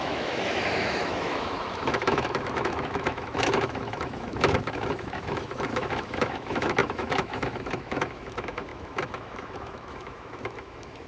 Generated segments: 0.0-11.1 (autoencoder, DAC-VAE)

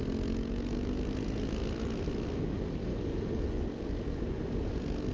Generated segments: none

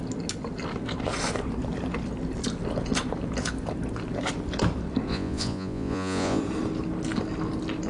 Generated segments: 5.1-6.4 (vocoder, Vocos)

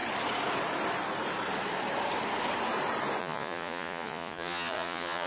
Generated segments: 3.2-5.3 (vocoder, Vocos)

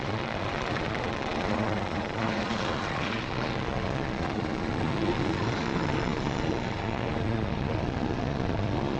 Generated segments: 0.0-9.0 (vocoder, Vocos)

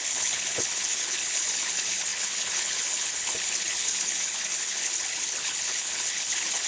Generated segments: 0.0-6.7 (codec, HILCodec)